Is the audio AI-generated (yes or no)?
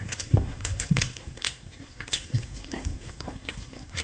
yes